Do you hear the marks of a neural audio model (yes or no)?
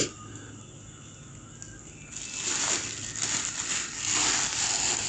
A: no